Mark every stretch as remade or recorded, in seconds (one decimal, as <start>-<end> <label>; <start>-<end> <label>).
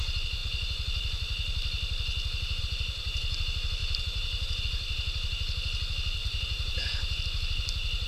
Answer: 0.0-3.8 recorded; 3.8-4.6 remade; 4.6-6.2 recorded; 6.2-7.2 remade; 7.2-8.1 recorded